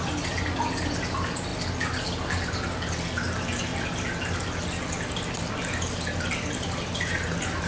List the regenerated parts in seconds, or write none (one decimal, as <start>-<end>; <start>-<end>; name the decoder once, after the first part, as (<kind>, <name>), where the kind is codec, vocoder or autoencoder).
none